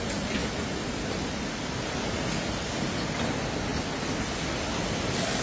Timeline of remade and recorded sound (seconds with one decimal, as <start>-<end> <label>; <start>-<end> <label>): 0.0-5.4 recorded